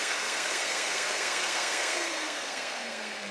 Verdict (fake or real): fake